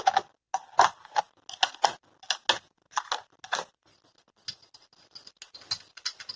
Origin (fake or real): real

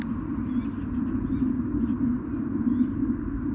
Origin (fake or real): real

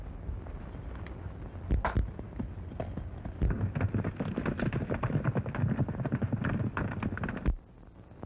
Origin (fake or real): real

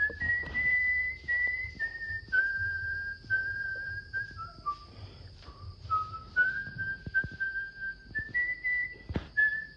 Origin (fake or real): fake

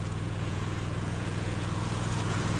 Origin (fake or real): fake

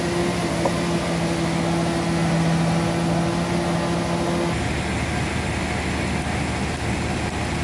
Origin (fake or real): real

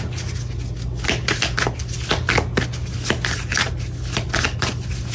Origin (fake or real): real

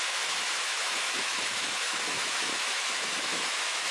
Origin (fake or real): fake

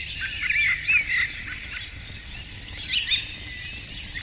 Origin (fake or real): real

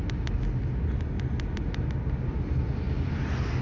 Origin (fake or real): real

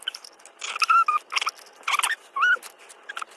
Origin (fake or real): real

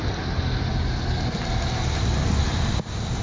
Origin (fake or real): real